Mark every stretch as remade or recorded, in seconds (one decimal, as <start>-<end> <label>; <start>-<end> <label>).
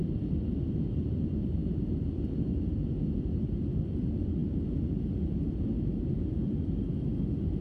0.0-7.6 recorded